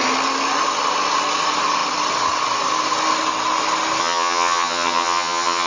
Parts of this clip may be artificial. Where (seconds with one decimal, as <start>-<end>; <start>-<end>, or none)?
4.0-5.7